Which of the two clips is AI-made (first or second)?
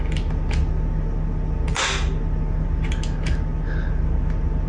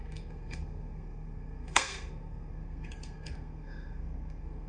second